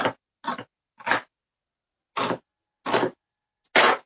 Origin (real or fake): real